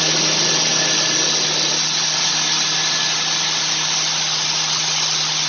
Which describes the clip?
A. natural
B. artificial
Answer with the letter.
A